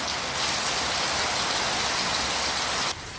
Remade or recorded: recorded